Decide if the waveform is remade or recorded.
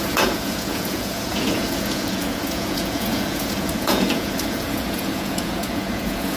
remade